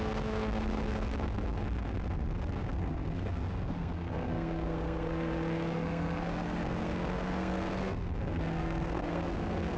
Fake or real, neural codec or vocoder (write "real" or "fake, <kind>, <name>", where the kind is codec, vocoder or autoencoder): fake, codec, SNAC